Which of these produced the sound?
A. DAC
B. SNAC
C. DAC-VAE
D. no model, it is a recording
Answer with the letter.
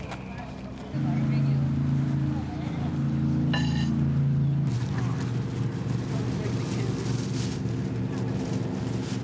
D